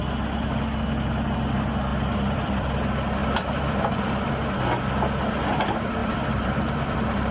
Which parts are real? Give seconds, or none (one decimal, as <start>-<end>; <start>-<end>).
0.0-1.9; 2.8-3.2; 4.3-6.0